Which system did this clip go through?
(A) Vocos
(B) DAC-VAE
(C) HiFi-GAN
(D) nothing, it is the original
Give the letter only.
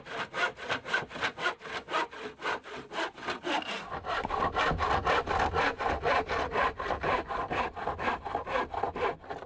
D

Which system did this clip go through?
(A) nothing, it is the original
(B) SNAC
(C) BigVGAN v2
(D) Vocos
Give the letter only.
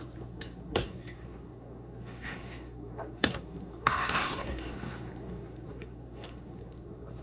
B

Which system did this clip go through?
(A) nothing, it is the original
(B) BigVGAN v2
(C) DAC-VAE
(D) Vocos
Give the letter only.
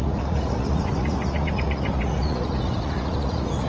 D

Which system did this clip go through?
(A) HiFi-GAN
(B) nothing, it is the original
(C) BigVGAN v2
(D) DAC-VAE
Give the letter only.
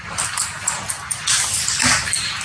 B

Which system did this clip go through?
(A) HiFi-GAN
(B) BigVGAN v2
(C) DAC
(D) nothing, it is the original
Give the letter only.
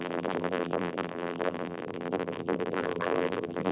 B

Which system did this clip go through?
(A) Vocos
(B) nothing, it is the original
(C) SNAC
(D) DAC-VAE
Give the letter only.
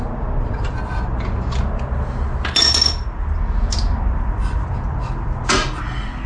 B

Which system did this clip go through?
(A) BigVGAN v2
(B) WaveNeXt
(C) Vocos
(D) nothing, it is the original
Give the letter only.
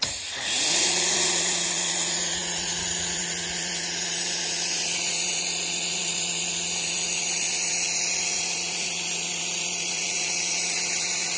C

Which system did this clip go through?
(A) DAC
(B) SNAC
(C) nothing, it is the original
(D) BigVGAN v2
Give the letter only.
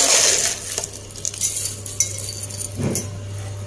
C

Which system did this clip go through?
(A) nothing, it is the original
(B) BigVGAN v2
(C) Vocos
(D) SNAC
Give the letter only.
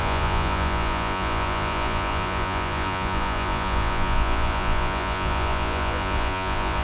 C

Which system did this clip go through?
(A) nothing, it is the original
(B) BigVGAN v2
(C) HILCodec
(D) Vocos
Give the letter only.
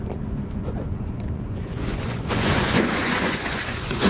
D